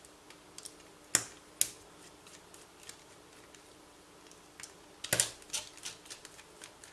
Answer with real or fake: real